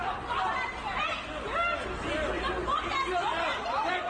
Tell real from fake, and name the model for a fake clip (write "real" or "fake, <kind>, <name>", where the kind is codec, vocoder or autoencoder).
real